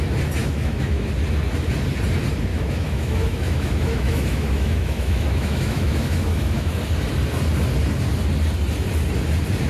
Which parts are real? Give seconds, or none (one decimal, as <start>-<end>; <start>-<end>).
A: 0.0-0.4; 1.1-2.5; 6.7-9.7